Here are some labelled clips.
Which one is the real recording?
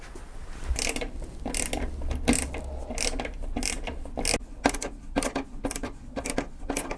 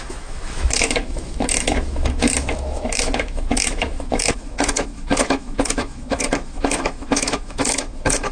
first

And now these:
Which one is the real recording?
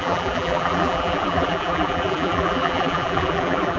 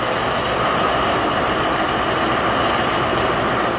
second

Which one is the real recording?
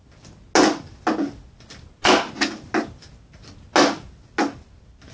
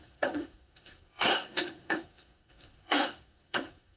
first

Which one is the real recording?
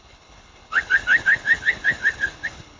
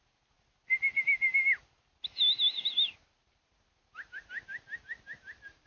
second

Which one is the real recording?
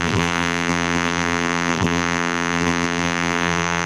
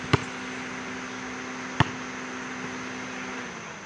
second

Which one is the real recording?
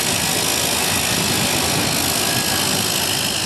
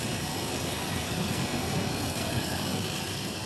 first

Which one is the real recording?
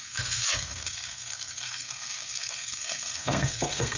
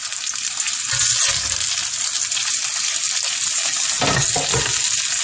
second